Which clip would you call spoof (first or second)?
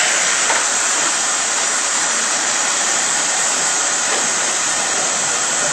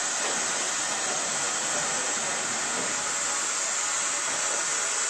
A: first